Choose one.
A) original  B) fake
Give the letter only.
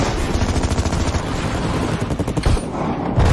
A